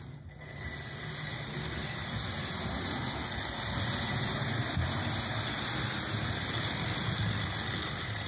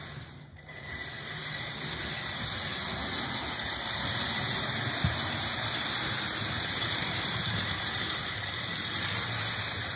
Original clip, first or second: first